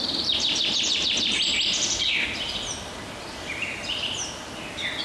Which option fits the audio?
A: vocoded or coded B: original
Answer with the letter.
B